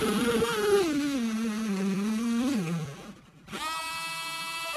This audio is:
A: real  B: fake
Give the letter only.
A